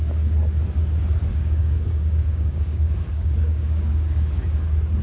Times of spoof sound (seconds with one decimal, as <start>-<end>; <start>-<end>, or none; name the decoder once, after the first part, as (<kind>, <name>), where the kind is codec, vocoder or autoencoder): 1.3-4.3 (codec, DAC)